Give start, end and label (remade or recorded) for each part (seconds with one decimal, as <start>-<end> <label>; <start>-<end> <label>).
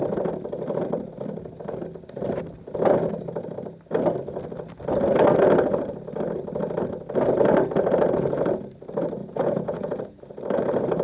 0.0-9.2 recorded; 9.2-10.2 remade; 10.2-11.0 recorded